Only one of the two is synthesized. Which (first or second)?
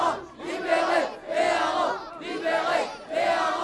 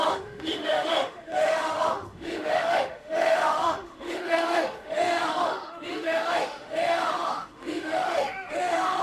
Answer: second